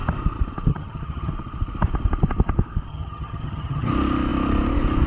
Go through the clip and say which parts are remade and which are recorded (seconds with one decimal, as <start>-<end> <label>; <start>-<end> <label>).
0.0-0.7 recorded; 0.7-1.3 remade; 1.3-2.9 recorded; 2.9-3.9 remade; 3.9-5.1 recorded